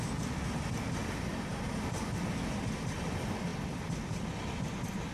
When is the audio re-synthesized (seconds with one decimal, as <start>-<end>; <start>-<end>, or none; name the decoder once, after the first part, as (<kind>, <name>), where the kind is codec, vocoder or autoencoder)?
none